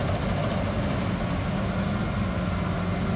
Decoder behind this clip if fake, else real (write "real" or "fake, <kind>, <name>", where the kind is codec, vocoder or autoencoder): real